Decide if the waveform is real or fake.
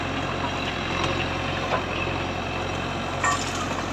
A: real